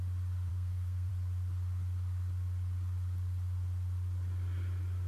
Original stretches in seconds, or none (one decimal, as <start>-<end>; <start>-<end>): 0.0-0.5; 1.1-5.1